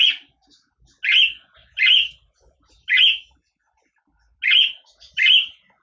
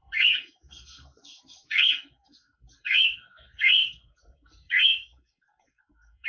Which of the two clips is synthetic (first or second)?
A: second